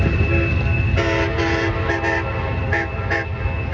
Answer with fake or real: real